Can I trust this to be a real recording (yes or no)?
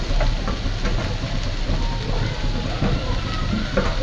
yes